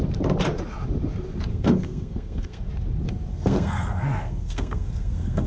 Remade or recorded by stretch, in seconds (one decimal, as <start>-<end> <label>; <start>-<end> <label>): 0.0-1.5 recorded; 1.5-2.7 remade; 2.7-3.3 recorded; 3.3-5.5 remade